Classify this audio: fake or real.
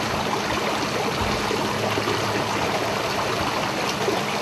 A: real